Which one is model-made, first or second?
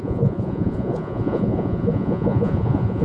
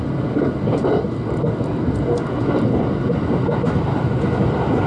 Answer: first